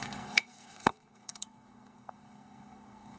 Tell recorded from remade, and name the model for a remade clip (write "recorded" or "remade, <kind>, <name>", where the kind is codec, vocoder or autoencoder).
remade, codec, SNAC